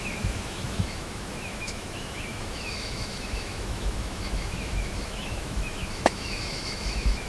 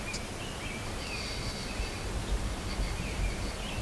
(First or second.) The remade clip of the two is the first